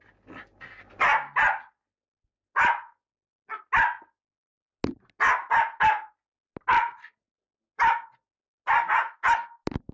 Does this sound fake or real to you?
real